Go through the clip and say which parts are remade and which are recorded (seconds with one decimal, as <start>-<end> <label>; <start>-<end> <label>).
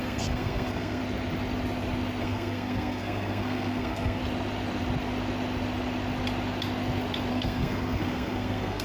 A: 0.0-1.0 remade; 1.0-2.2 recorded; 2.2-4.2 remade; 4.2-7.3 recorded; 7.3-8.8 remade